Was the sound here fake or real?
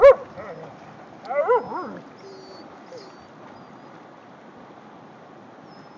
real